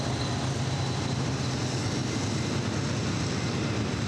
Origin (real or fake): real